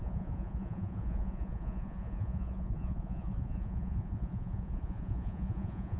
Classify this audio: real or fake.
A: fake